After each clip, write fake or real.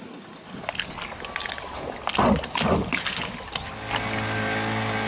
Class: real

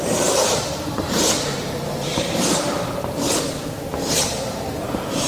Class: fake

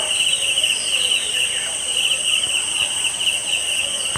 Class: real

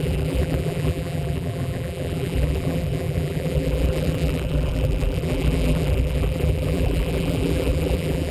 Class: fake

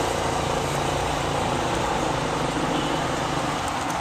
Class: fake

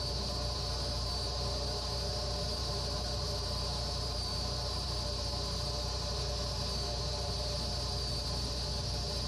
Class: real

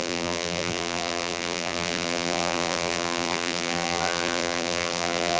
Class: fake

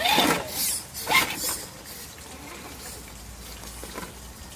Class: real